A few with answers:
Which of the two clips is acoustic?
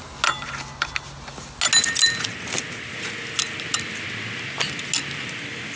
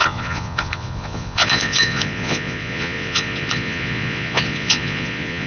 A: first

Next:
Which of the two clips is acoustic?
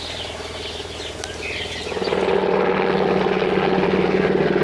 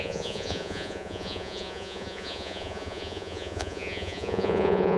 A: first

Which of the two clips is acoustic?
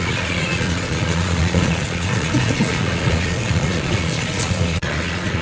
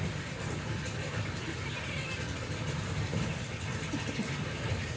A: second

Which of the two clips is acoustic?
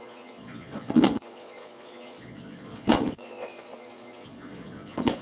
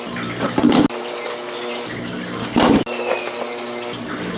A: second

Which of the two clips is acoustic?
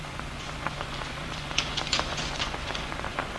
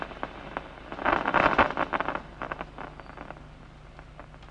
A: second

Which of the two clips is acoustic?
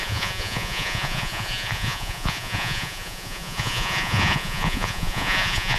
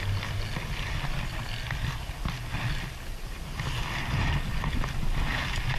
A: second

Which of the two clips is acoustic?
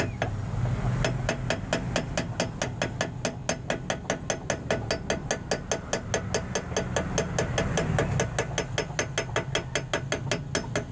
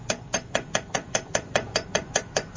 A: first